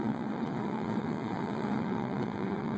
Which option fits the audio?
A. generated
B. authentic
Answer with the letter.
A